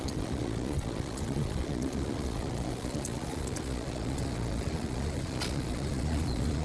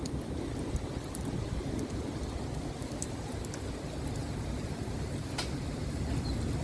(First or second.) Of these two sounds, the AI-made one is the first